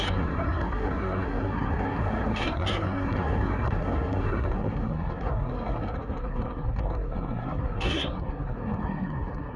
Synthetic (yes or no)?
yes